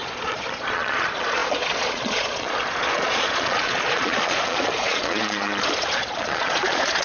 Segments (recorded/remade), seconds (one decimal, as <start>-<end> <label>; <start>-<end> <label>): 0.0-7.0 remade